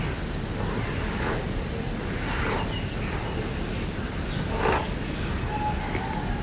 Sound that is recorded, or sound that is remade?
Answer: recorded